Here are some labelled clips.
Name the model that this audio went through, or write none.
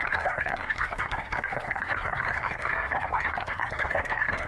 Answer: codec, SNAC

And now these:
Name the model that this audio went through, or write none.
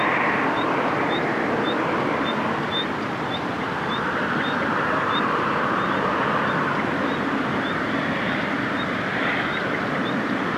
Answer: vocoder, BigVGAN v2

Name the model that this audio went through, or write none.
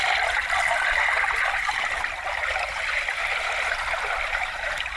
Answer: none